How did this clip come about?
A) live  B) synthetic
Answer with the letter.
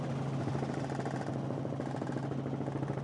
A